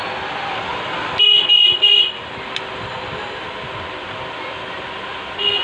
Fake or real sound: real